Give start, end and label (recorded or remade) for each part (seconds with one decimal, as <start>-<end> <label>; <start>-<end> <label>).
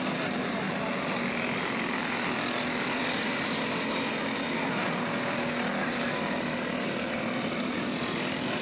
0.0-8.6 recorded